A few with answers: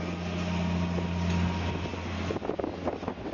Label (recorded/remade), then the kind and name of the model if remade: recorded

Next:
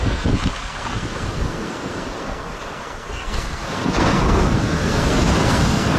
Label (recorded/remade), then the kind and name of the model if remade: remade, codec, SNAC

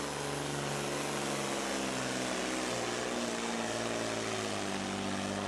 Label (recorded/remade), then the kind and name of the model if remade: recorded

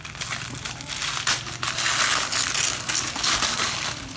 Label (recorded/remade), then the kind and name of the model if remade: recorded